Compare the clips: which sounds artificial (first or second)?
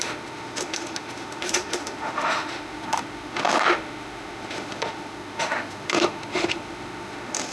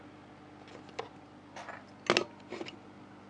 first